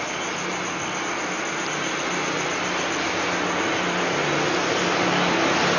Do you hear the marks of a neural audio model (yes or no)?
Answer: no